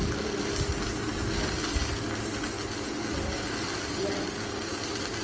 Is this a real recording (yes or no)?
yes